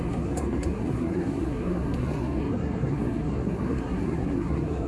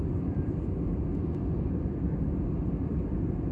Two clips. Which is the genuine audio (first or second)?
second